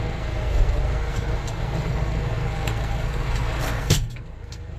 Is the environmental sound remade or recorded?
remade